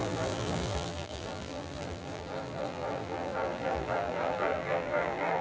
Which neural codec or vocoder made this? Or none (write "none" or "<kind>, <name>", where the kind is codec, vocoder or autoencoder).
vocoder, BigVGAN v2